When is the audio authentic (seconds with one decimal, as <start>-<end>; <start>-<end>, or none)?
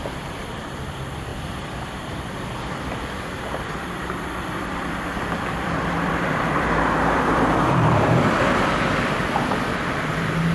none